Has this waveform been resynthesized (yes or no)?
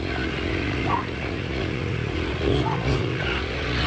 yes